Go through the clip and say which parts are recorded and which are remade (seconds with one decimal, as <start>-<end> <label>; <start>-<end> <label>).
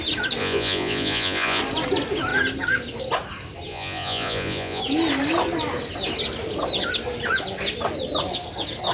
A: 0.0-0.4 recorded; 0.4-1.6 remade; 1.6-3.7 recorded; 3.7-4.8 remade; 4.8-8.9 recorded